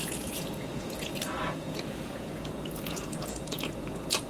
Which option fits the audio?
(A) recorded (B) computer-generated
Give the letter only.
B